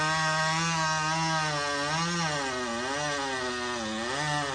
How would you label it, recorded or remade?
recorded